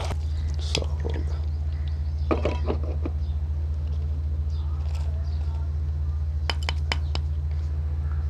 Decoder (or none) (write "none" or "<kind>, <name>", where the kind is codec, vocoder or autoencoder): none